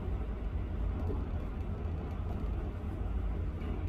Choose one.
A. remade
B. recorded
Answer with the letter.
B